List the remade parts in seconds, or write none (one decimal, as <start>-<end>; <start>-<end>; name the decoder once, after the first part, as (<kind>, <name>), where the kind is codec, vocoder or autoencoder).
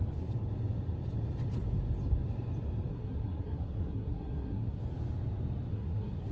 2.9-4.8 (codec, SNAC); 5.7-6.3